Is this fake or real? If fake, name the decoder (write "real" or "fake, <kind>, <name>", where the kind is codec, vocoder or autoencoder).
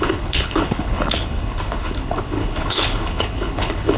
fake, codec, HILCodec